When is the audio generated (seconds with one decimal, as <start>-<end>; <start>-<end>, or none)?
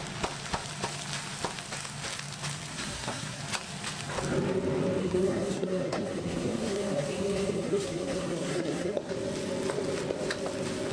2.7-3.4; 5.0-9.1